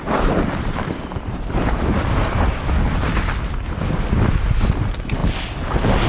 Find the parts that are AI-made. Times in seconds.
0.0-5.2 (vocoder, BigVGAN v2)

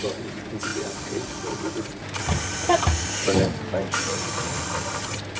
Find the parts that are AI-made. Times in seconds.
0.7-3.1 (vocoder, BigVGAN v2)

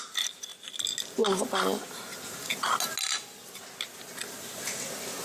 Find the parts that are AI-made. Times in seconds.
none

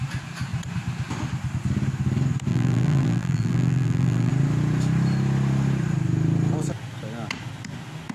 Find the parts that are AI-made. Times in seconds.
2.5-4.3 (vocoder, BigVGAN v2)

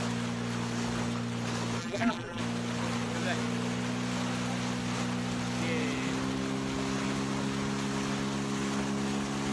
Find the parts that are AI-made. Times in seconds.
1.8-2.4 (vocoder, BigVGAN v2)